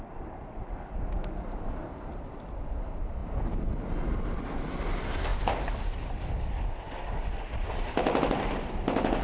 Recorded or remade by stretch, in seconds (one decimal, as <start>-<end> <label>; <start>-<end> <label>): 0.0-9.2 recorded